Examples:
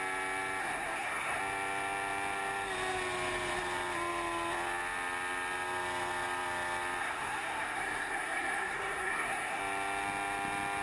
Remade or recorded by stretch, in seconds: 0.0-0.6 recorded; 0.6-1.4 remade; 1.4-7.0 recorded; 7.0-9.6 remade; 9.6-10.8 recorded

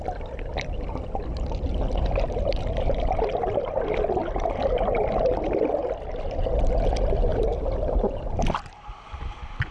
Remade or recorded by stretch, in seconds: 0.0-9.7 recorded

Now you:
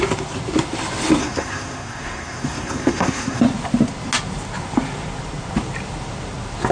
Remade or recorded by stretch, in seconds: 0.0-1.2 recorded; 1.2-3.4 remade; 3.4-6.7 recorded